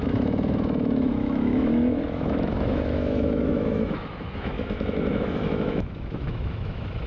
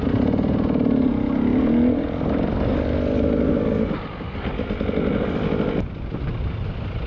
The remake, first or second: first